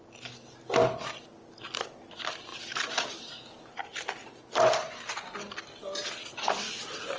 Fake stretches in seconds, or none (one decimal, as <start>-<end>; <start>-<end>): none